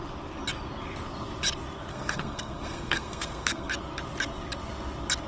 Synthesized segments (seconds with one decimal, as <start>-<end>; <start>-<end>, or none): 1.9-3.7